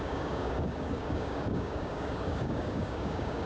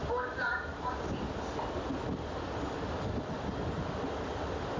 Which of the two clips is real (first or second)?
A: second